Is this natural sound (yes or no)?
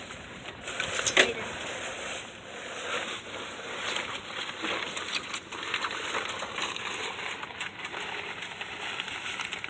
yes